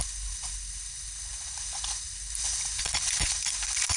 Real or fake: fake